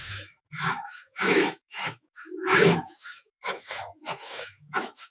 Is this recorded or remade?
remade